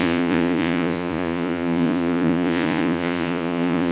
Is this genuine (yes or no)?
no